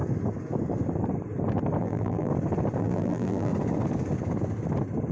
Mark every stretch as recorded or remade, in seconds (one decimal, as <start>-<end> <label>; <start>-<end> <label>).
0.0-1.8 recorded; 1.8-2.3 remade; 2.3-2.8 recorded; 2.8-3.5 remade; 3.5-5.1 recorded